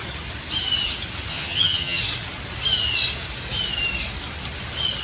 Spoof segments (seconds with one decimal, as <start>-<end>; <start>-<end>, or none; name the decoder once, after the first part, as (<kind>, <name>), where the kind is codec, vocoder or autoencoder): 1.3-2.0 (vocoder, HiFi-GAN)